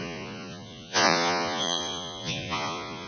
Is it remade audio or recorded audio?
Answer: remade